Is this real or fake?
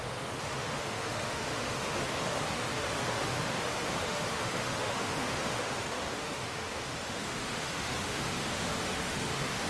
fake